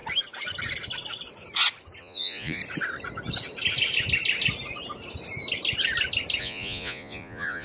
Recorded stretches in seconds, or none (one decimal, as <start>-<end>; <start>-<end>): 0.0-2.0; 2.6-6.4